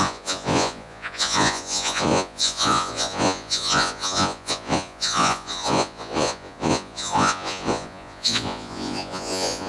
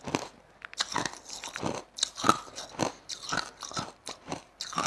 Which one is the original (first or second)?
second